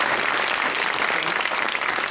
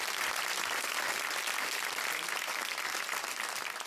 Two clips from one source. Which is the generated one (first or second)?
first